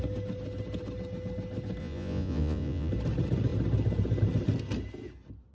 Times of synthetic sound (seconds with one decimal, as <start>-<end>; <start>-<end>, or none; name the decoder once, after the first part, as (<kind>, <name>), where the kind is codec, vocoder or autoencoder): 1.8-2.9 (vocoder, Vocos)